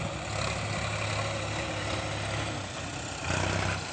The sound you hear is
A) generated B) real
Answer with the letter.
B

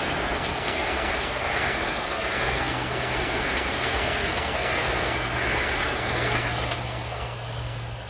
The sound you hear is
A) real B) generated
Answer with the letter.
B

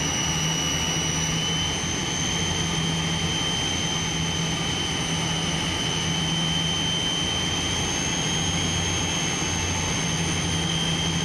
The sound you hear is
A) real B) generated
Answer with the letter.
A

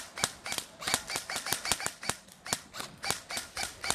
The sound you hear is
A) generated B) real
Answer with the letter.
B